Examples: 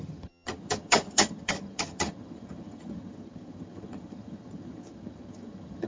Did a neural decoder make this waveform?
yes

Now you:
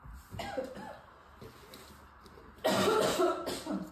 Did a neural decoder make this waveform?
no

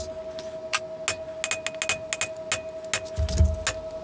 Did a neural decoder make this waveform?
no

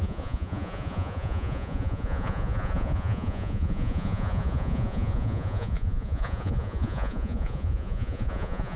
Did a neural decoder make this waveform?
yes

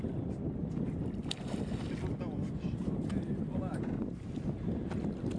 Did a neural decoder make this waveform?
no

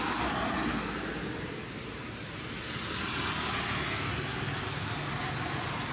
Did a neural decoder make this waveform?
no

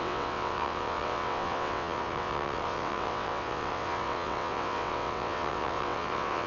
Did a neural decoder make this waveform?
yes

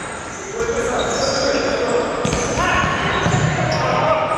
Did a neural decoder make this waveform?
no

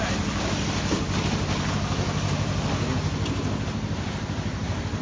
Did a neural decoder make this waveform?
no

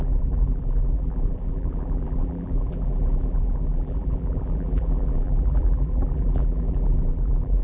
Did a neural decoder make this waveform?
yes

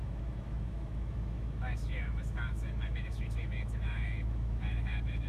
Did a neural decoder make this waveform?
yes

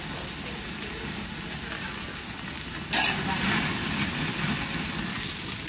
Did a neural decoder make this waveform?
no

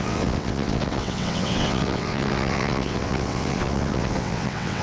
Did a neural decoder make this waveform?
yes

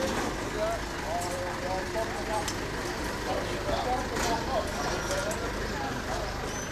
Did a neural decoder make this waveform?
no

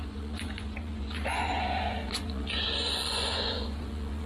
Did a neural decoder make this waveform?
yes